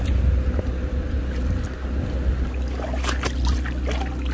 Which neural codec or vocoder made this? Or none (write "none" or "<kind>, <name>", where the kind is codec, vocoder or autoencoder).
none